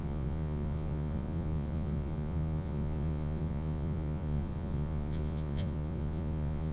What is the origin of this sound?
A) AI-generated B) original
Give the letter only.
A